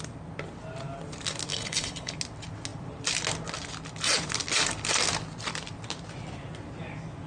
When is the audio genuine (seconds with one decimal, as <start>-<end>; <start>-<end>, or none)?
0.0-1.5; 2.1-7.3